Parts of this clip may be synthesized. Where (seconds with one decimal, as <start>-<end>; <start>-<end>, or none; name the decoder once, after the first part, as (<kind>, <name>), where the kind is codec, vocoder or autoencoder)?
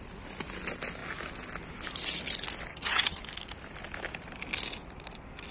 2.7-3.2 (vocoder, HiFi-GAN)